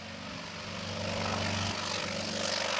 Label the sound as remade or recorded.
recorded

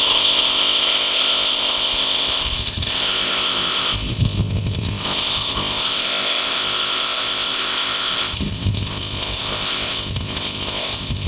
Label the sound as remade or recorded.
remade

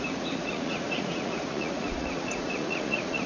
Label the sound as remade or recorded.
remade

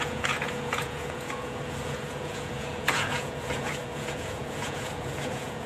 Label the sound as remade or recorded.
remade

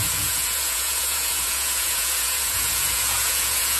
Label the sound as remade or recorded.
remade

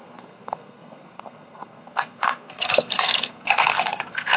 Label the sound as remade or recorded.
remade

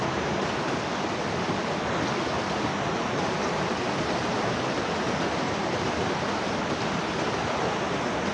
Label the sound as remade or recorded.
recorded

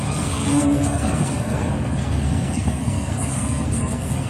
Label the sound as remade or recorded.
remade